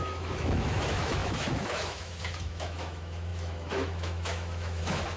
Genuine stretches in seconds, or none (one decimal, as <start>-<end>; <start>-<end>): none